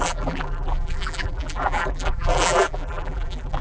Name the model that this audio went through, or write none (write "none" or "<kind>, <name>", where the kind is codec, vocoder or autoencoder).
vocoder, BigVGAN v2